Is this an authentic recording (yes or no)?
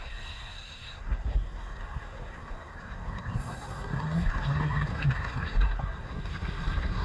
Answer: no